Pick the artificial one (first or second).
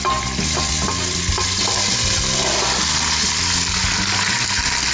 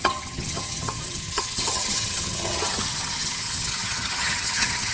second